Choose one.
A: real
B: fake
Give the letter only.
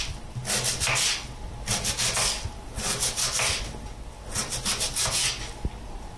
A